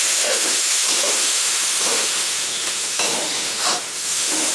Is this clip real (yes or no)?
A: no